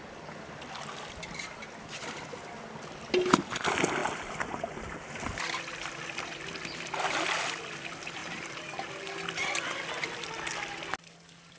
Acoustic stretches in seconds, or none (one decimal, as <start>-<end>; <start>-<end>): 0.0-8.2; 8.9-11.6